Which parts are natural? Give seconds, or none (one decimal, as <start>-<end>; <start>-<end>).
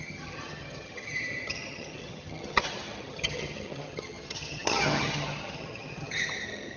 none